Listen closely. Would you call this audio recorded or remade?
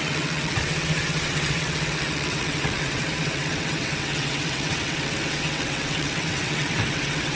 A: remade